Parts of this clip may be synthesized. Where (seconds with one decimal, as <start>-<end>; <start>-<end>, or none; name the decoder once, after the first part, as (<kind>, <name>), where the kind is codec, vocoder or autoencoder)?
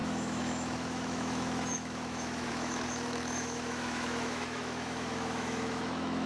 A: 0.0-6.3 (autoencoder, DAC-VAE)